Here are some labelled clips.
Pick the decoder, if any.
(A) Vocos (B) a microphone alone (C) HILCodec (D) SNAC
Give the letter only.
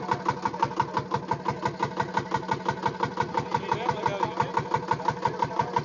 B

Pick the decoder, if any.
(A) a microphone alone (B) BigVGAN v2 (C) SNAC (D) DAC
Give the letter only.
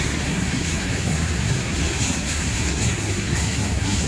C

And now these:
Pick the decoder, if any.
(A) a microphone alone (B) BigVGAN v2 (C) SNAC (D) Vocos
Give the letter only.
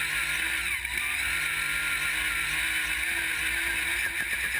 A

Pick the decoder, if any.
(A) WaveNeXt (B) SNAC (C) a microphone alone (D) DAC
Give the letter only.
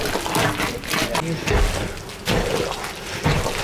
C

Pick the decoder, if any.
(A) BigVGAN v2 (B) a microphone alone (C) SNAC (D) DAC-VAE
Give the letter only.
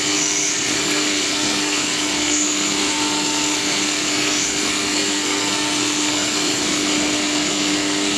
C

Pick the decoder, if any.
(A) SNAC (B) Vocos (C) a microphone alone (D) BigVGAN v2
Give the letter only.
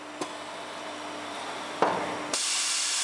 C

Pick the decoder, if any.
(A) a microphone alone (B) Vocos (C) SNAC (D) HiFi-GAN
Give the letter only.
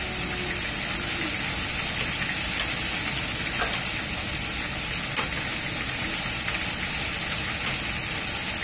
A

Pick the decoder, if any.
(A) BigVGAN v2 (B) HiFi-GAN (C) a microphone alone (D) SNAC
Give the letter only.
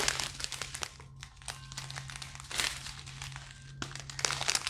C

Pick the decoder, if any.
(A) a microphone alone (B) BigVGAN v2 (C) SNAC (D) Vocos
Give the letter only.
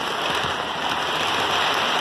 A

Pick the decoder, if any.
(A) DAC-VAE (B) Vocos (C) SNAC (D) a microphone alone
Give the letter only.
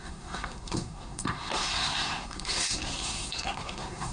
C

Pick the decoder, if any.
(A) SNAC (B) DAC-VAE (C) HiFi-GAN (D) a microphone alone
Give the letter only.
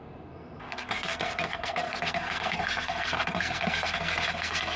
A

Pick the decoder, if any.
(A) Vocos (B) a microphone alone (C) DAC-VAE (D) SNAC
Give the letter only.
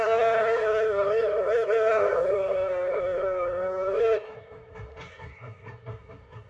D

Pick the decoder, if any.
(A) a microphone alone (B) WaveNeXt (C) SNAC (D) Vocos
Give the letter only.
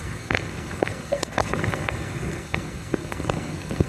C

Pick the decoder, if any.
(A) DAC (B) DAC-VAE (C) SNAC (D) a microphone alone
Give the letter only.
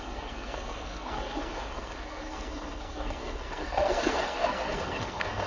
C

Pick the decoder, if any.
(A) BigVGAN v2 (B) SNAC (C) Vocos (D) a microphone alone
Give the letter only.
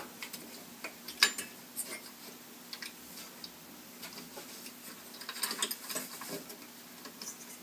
D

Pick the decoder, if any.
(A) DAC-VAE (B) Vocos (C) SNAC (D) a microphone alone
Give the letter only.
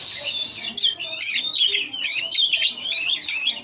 D